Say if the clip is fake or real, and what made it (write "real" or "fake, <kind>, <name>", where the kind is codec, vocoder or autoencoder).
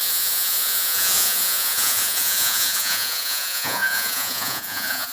fake, vocoder, Vocos